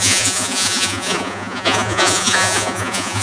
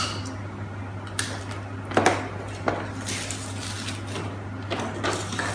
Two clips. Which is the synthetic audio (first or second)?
first